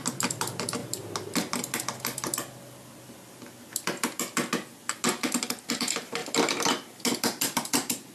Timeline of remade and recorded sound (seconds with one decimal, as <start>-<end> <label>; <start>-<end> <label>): 0.0-8.1 recorded